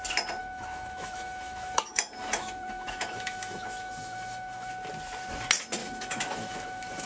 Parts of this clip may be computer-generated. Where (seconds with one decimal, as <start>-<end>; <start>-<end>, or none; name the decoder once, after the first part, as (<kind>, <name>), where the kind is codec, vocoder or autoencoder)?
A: 0.4-4.7 (autoencoder, DAC-VAE); 5.8-7.1